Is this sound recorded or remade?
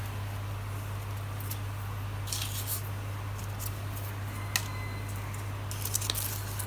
recorded